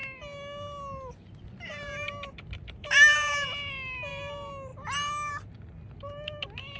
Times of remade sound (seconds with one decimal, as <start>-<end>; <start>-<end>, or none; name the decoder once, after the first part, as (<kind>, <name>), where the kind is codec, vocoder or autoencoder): none